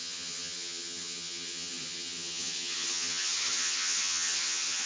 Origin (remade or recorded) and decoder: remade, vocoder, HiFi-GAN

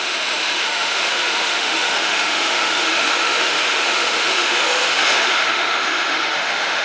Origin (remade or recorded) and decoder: remade, autoencoder, DAC-VAE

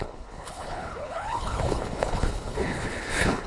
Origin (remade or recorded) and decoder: remade, codec, HILCodec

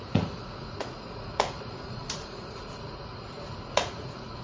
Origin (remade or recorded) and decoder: remade, vocoder, Vocos